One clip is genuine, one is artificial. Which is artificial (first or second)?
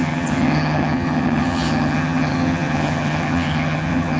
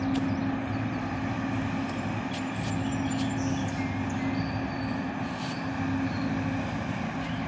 first